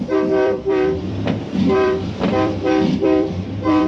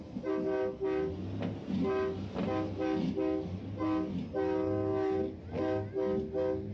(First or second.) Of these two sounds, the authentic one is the second